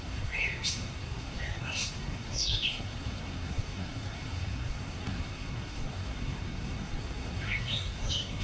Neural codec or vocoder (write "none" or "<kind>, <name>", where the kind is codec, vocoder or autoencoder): codec, SNAC